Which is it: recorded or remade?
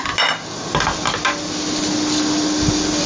recorded